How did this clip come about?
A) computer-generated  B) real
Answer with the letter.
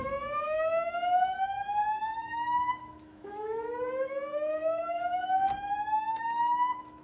A